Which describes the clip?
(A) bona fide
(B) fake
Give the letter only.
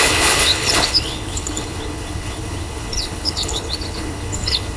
B